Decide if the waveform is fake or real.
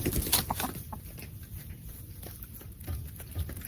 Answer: real